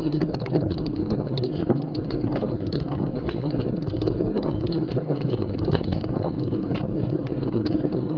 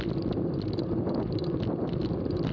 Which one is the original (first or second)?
second